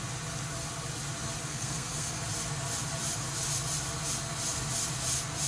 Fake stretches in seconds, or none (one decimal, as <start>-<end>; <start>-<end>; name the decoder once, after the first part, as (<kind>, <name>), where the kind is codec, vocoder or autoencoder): 1.5-2.2 (codec, SNAC)